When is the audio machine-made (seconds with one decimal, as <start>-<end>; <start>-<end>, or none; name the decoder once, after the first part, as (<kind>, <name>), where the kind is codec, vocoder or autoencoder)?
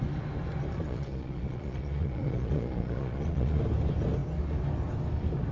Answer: 0.7-3.6 (vocoder, Vocos)